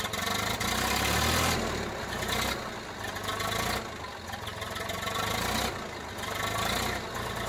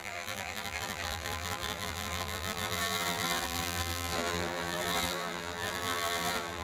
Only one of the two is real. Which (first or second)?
first